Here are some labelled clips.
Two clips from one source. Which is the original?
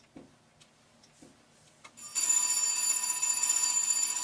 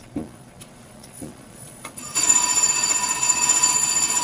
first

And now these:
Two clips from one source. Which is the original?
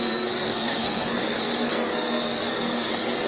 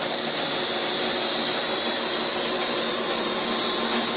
second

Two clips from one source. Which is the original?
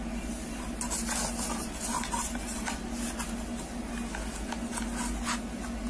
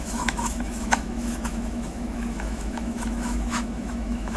first